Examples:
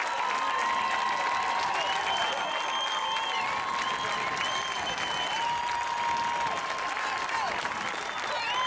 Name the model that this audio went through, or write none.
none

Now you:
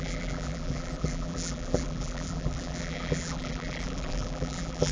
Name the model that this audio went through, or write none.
vocoder, BigVGAN v2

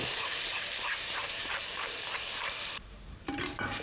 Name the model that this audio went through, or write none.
vocoder, BigVGAN v2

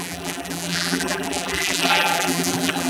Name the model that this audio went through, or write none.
vocoder, BigVGAN v2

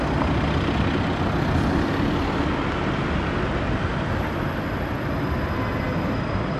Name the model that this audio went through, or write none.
none